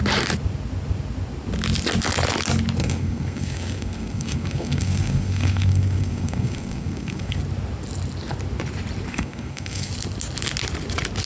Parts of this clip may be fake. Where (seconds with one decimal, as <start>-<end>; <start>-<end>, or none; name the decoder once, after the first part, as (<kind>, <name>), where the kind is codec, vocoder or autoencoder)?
2.8-7.4 (codec, SNAC); 9.1-9.9